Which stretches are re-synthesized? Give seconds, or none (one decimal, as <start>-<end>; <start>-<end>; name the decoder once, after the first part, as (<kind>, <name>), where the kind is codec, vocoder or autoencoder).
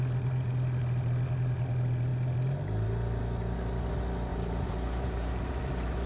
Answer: 4.3-6.1 (vocoder, BigVGAN v2)